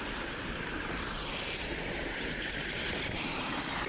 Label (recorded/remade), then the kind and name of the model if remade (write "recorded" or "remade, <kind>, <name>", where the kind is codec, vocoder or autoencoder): remade, vocoder, BigVGAN v2